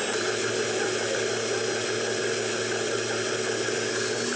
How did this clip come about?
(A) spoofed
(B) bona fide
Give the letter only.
B